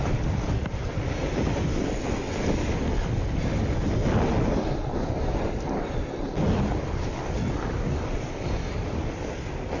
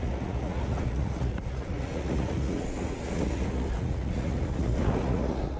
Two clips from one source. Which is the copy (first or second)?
second